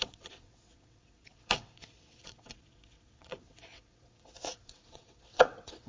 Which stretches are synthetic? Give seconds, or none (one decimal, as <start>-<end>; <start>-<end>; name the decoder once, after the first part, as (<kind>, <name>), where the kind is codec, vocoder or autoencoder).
0.0-5.9 (vocoder, WaveNeXt)